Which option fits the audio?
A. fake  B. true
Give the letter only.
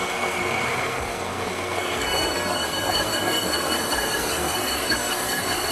A